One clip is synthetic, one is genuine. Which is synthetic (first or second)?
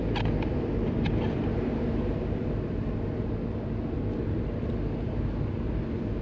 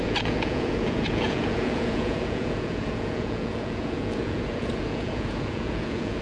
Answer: second